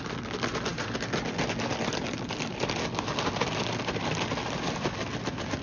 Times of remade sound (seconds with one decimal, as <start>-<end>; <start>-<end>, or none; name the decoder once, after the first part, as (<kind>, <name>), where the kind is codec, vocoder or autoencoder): none